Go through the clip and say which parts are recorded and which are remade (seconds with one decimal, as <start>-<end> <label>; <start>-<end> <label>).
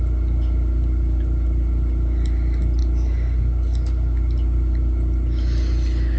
0.0-6.2 recorded